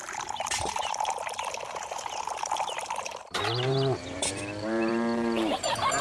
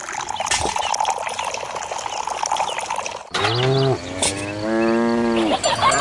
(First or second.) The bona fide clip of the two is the second